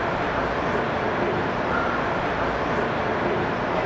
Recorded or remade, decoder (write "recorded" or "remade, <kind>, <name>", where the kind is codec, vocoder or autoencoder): recorded